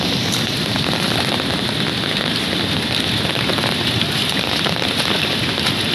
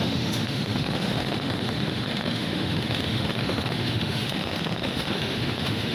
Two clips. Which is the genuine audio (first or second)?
first